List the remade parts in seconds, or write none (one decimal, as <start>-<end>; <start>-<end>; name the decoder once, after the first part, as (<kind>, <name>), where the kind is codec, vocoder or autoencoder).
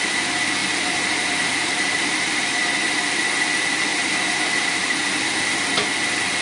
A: 0.6-2.4 (vocoder, BigVGAN v2); 3.9-5.1